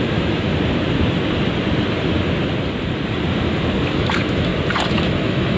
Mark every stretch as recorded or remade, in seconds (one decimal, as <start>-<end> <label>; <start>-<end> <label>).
0.0-0.5 remade; 0.5-3.9 recorded; 3.9-4.5 remade; 4.5-5.0 recorded; 5.0-5.6 remade